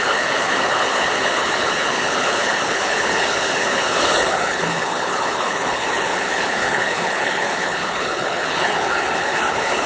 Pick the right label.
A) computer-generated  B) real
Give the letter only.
A